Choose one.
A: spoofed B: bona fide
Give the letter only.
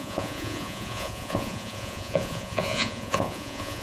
A